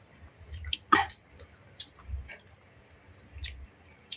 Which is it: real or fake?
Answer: real